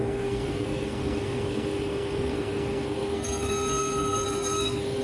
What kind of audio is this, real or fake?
fake